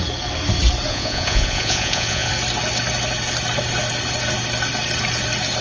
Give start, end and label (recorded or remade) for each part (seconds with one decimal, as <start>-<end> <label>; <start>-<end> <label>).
0.0-0.9 recorded; 0.9-2.3 remade; 2.3-5.6 recorded